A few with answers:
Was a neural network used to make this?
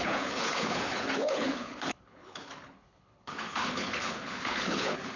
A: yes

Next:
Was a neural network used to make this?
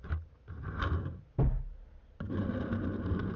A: no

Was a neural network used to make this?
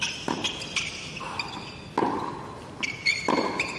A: no